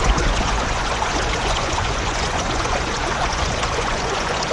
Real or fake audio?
fake